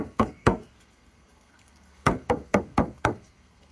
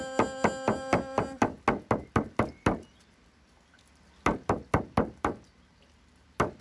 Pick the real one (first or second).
second